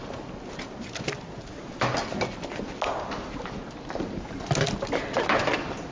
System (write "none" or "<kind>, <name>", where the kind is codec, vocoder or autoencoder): none